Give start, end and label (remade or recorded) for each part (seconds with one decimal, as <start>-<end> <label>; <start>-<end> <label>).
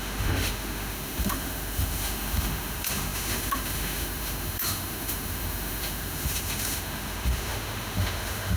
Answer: 0.0-8.6 remade